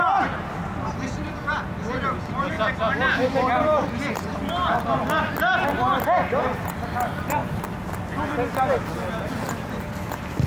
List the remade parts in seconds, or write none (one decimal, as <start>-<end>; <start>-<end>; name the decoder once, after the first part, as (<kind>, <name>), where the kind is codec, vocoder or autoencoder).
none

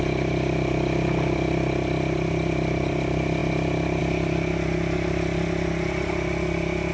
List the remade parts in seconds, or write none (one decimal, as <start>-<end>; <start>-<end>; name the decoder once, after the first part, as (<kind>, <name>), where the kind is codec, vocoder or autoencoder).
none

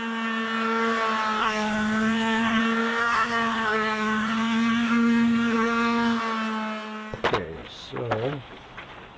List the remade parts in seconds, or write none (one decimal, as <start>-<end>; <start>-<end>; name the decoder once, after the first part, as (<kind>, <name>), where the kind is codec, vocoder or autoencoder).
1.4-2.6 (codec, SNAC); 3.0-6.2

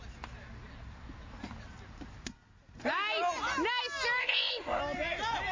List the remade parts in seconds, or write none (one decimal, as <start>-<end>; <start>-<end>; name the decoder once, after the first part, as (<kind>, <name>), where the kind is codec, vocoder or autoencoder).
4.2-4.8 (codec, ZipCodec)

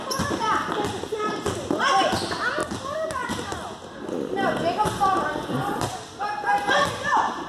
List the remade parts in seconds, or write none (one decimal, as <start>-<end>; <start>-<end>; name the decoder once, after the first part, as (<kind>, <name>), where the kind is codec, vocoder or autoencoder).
none

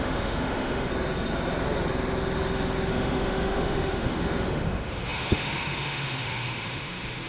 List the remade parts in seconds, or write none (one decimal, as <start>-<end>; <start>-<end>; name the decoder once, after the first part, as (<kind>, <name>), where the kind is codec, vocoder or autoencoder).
0.0-0.9 (autoencoder, DAC-VAE); 2.9-7.3

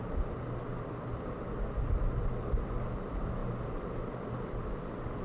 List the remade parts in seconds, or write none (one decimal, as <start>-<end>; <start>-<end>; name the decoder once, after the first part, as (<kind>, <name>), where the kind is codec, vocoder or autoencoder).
none

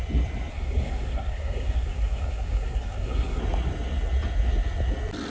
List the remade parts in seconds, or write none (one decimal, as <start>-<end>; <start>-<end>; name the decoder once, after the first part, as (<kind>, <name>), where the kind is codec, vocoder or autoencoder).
0.5-3.4 (codec, SNAC)